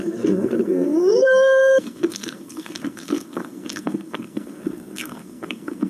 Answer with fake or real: fake